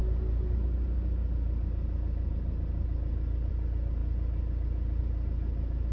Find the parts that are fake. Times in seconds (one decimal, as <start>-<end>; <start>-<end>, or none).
none